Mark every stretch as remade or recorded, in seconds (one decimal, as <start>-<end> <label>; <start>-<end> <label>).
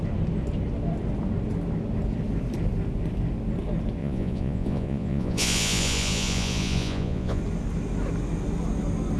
0.0-4.0 recorded; 4.0-7.4 remade; 7.4-9.2 recorded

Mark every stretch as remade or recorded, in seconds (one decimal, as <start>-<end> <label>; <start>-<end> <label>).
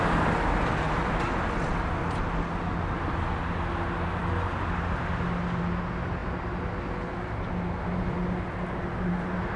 0.0-9.6 recorded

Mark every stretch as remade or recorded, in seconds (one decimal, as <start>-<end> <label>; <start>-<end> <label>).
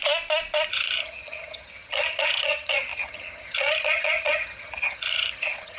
0.0-0.7 recorded; 0.7-5.8 remade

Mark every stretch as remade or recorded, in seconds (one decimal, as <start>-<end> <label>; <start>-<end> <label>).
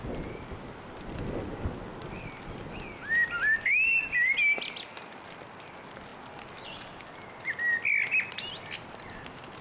0.0-9.6 recorded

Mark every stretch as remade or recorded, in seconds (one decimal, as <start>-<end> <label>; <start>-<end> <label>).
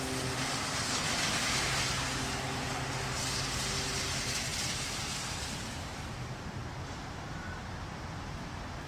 0.0-8.9 recorded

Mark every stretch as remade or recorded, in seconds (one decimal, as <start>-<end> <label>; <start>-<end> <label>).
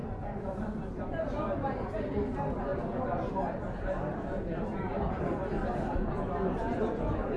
0.0-1.3 remade; 1.3-2.7 recorded; 2.7-3.3 remade; 3.3-7.4 recorded